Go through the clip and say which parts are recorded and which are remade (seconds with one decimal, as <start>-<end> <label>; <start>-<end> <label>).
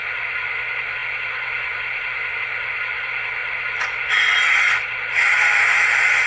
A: 0.0-6.3 recorded